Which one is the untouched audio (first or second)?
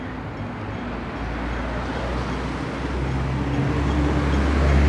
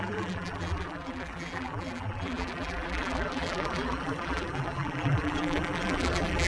first